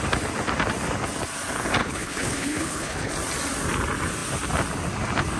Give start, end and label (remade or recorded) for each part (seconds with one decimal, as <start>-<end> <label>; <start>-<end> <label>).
0.0-1.8 recorded; 1.8-3.1 remade; 3.1-5.4 recorded